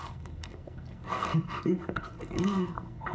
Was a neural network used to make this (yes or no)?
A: yes